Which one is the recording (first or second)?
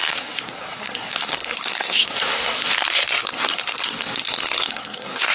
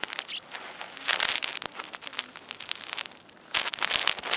second